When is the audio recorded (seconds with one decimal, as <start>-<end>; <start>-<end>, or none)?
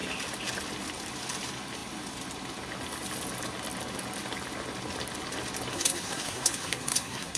0.0-5.7